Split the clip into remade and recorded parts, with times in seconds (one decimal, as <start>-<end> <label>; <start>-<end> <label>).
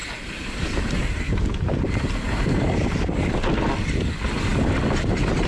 0.0-3.3 remade; 3.3-5.5 recorded